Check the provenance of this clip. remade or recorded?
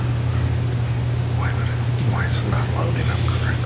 recorded